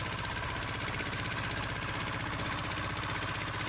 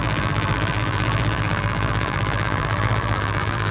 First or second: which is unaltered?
first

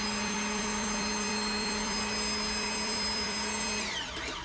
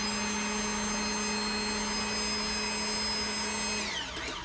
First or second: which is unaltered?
second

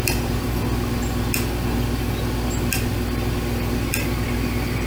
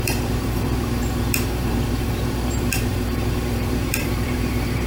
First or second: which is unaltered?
first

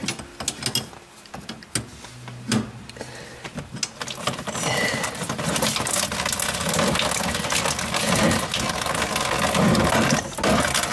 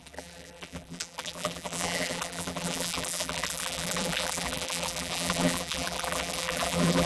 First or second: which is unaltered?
first